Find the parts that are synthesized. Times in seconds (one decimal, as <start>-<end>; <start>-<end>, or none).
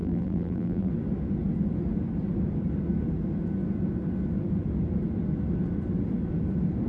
0.0-0.9